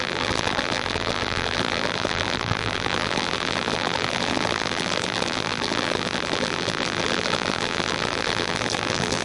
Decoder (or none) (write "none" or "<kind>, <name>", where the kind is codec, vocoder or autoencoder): vocoder, BigVGAN v2